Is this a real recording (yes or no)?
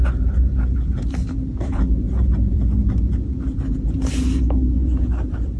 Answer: no